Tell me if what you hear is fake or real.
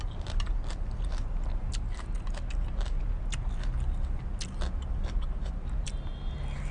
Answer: real